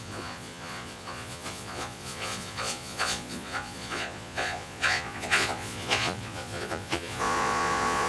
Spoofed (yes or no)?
yes